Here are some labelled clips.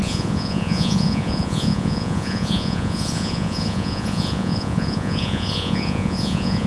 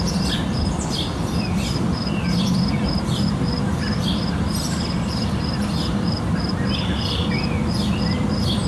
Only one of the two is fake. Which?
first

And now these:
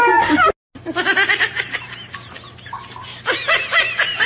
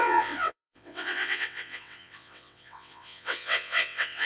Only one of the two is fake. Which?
second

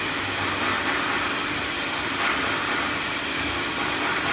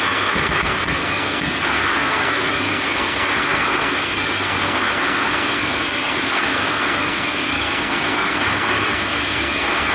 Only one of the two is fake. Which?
second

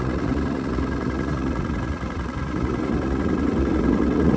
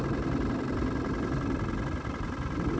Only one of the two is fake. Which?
first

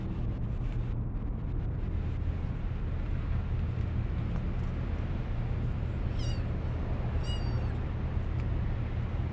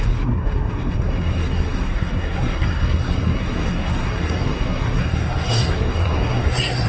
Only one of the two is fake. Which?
second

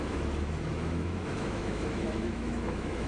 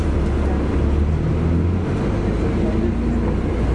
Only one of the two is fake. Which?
first